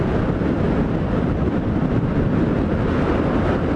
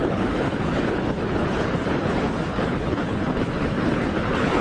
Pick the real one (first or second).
first